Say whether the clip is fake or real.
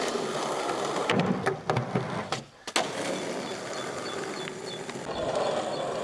real